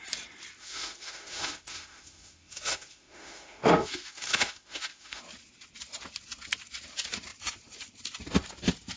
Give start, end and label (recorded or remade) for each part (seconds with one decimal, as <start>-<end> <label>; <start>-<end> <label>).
0.0-0.6 recorded; 0.6-5.2 remade; 5.2-9.0 recorded